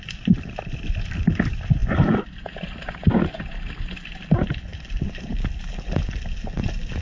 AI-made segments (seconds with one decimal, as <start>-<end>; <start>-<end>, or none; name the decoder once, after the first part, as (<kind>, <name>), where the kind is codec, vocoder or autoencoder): none